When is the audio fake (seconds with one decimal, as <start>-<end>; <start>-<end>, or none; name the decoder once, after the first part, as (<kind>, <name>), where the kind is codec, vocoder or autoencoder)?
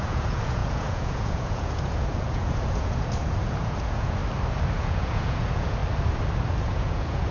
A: 0.0-4.2 (vocoder, Vocos); 4.8-5.8; 6.6-7.3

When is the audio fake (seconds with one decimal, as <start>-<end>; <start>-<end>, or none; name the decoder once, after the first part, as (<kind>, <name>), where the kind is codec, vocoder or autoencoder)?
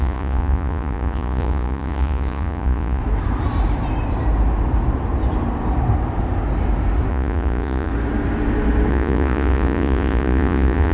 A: 0.0-3.0 (vocoder, Vocos); 7.1-7.9; 8.9-10.9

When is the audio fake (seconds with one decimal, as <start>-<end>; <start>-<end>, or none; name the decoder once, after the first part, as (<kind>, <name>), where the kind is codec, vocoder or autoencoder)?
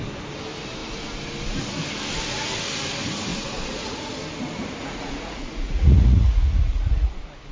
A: 3.3-4.1 (vocoder, Vocos); 4.8-7.1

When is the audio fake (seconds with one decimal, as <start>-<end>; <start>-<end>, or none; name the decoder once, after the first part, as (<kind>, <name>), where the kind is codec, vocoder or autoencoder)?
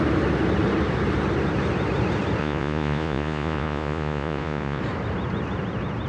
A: 2.4-4.8 (vocoder, Vocos)